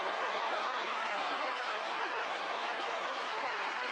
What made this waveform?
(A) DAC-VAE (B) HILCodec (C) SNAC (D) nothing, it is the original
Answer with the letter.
C